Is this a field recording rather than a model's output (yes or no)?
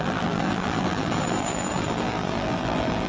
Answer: no